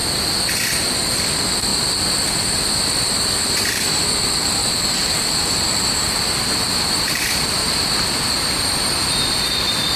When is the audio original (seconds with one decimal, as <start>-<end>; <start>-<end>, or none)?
0.0-1.1; 1.7-2.4

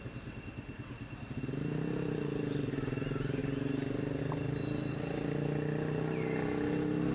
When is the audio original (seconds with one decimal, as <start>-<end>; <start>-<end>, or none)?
0.0-7.1

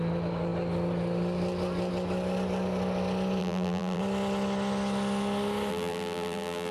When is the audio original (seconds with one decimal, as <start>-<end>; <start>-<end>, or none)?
0.0-3.4; 4.0-5.7

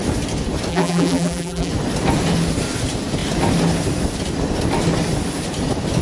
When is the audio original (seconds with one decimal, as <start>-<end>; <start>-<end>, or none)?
0.0-0.7; 1.7-6.0

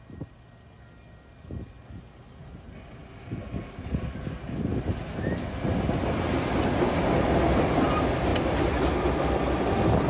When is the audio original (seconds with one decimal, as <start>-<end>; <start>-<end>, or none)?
0.0-10.1

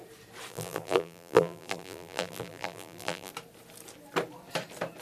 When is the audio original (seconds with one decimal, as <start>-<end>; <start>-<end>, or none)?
0.0-0.5; 3.3-5.0

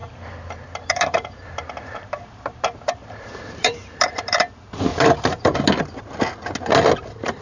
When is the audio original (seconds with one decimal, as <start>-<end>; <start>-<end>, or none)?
4.4-4.9; 5.5-7.4

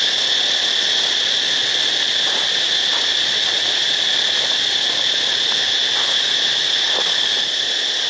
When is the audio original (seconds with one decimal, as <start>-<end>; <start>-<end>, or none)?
0.0-8.1